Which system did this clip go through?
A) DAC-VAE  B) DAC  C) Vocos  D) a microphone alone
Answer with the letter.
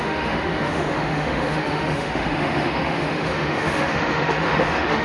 A